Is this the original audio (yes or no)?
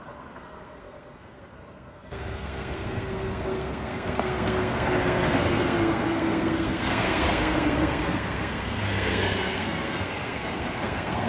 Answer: no